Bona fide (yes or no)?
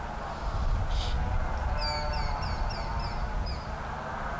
yes